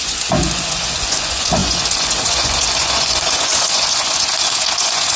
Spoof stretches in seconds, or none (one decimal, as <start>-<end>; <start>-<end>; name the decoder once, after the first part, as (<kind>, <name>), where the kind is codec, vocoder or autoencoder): 0.0-5.2 (vocoder, Vocos)